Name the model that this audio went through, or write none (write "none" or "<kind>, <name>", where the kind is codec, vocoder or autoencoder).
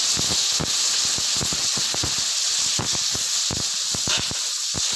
none